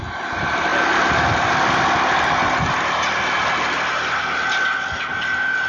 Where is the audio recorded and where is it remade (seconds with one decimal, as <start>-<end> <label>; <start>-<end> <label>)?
0.0-5.7 recorded